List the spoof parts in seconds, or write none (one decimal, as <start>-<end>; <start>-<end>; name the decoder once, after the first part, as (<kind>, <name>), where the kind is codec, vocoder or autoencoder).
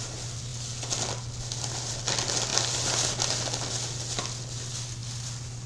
none